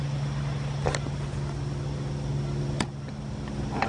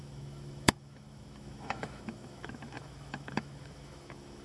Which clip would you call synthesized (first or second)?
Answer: second